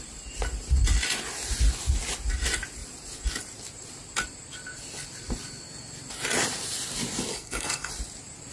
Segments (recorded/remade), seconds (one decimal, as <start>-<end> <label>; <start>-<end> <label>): 0.0-7.3 recorded; 7.3-7.9 remade; 7.9-8.5 recorded